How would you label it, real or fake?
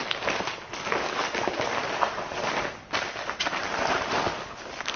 real